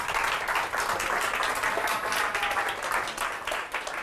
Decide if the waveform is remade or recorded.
recorded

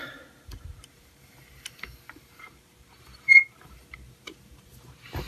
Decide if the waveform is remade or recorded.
remade